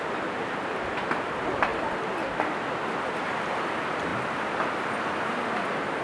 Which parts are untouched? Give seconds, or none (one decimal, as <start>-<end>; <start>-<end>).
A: 0.0-6.0